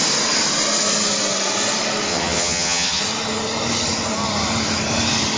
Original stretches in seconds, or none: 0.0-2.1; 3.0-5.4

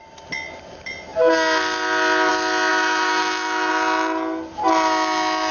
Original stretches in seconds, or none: 0.0-2.7; 3.7-5.5

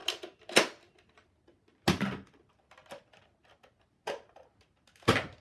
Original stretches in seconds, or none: 0.0-5.4

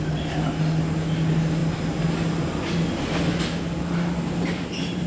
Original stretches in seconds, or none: 0.0-5.1

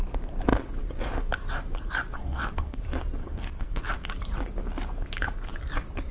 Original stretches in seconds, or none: 0.0-2.2; 2.8-3.2; 3.8-6.1

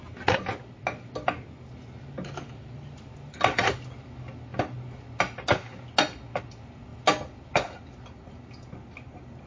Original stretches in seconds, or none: 0.0-9.5

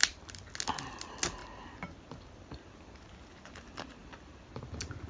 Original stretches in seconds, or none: 0.0-1.4; 2.8-4.0